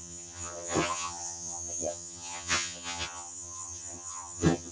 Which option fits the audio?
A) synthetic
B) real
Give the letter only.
A